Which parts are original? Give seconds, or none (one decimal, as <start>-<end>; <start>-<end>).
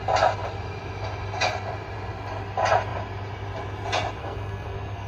0.0-4.2